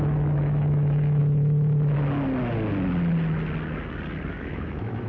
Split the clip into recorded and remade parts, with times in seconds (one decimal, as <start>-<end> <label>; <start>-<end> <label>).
0.0-1.2 remade; 1.2-4.3 recorded; 4.3-5.1 remade